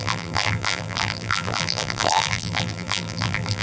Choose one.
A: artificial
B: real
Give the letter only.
A